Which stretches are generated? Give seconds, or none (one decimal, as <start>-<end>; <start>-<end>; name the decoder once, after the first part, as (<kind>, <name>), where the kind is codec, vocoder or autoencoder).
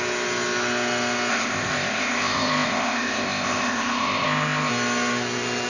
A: 1.3-4.7 (codec, ZipCodec)